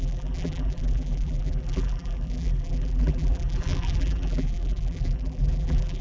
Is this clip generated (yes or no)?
yes